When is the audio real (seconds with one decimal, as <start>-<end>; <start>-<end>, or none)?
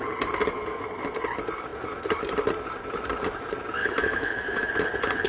0.0-3.8; 4.7-5.3